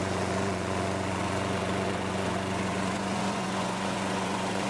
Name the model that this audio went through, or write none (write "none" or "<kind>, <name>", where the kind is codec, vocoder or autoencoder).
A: vocoder, Vocos